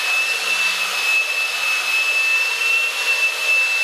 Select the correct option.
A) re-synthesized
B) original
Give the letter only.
B